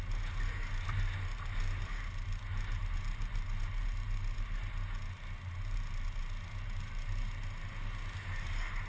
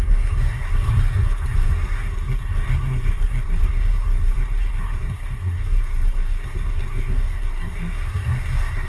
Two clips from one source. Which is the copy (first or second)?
second